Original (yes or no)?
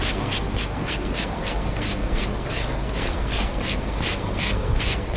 no